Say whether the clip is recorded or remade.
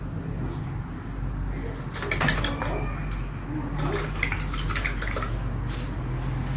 recorded